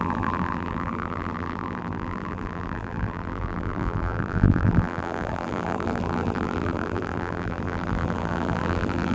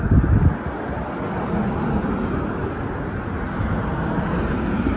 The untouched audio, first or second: second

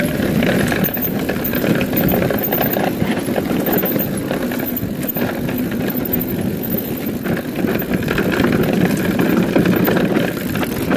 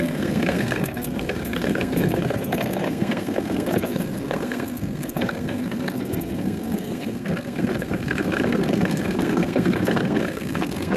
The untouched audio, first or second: first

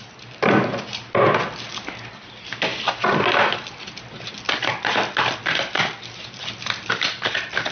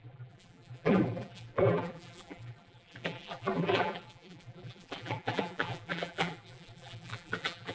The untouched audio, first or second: first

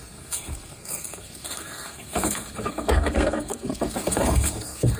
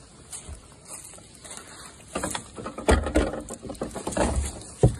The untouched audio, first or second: second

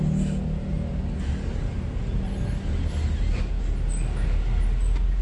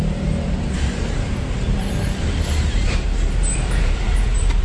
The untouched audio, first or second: first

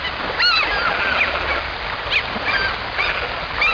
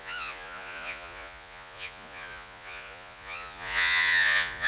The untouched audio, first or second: first